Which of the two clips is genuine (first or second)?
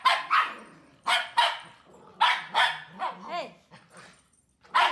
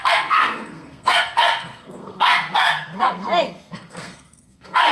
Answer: first